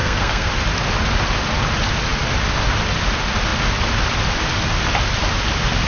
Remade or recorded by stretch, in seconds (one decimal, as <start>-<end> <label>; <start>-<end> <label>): 0.0-0.5 remade; 0.5-5.9 recorded